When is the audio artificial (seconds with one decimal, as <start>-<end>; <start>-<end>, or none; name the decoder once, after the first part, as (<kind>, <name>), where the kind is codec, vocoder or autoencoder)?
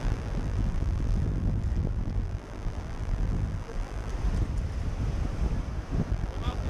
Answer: 0.0-4.1 (vocoder, BigVGAN v2); 6.1-6.7